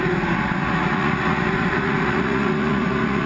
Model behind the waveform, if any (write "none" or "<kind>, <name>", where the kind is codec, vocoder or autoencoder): vocoder, Vocos